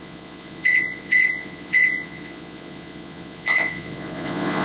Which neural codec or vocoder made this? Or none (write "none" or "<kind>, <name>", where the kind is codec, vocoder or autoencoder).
vocoder, Vocos